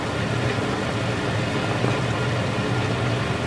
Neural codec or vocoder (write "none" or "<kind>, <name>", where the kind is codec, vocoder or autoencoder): none